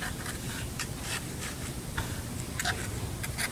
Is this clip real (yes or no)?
no